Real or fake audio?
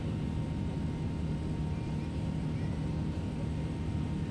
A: real